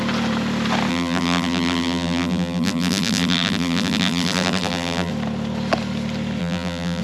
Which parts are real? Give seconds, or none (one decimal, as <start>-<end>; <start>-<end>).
0.0-0.9; 5.1-6.4